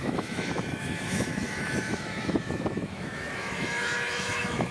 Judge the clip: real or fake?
fake